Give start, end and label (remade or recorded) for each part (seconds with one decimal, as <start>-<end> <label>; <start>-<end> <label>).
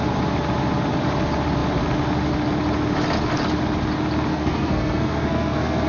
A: 0.0-4.3 recorded; 4.3-5.9 remade